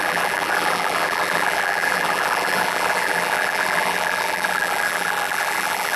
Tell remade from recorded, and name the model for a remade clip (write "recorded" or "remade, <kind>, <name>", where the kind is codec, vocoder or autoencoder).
remade, vocoder, BigVGAN v2